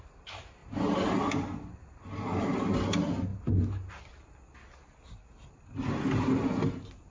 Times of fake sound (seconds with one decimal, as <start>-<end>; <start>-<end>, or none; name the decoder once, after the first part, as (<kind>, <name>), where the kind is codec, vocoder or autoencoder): none